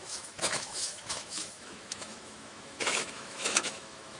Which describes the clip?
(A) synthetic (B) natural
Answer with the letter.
A